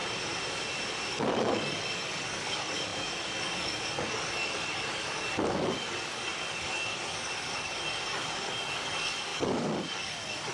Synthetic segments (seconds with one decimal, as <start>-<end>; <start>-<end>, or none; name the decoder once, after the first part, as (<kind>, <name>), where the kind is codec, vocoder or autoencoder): 1.1-10.5 (codec, DAC)